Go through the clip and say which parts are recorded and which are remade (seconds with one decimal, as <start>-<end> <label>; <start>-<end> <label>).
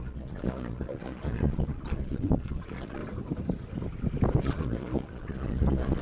0.0-3.0 remade; 3.0-4.4 recorded; 4.4-6.0 remade